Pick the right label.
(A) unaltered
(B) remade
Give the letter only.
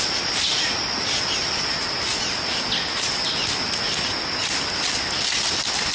A